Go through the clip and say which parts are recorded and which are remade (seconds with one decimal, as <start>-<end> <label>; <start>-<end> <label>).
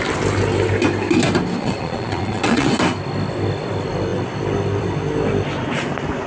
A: 0.0-1.6 recorded; 1.6-2.7 remade; 2.7-6.3 recorded